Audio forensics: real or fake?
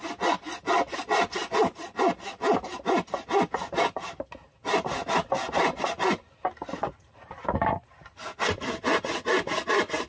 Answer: real